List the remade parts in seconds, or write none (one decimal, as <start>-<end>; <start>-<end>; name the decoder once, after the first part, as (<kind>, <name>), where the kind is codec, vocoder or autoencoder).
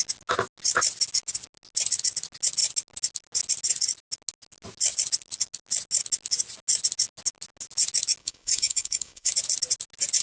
8.2-9.3 (codec, DAC)